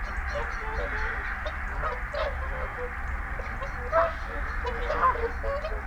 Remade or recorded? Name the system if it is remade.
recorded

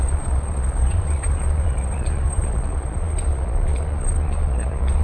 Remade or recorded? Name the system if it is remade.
remade, vocoder, Vocos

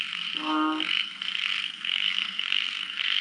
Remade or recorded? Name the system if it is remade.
remade, codec, SNAC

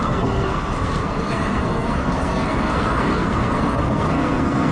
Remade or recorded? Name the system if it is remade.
remade, codec, SNAC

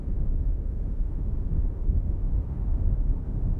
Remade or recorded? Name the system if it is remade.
remade, autoencoder, DAC-VAE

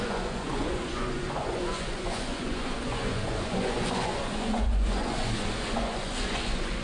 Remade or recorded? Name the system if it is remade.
remade, vocoder, Vocos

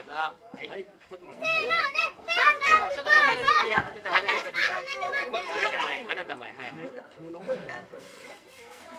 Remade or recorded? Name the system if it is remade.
remade, codec, SNAC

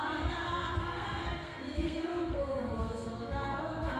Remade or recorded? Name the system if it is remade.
remade, codec, SNAC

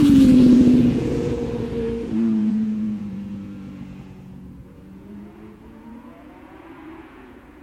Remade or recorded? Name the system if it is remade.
remade, vocoder, Vocos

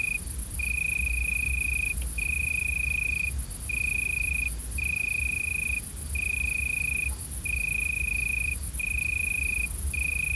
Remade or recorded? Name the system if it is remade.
recorded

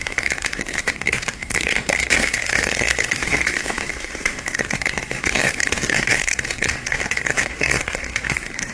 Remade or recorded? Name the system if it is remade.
remade, codec, SNAC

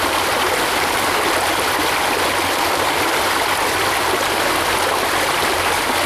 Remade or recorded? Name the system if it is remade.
recorded